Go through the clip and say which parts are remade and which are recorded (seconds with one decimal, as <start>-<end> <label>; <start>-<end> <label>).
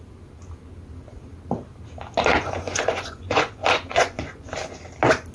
0.0-2.3 recorded; 2.3-4.5 remade; 4.5-5.3 recorded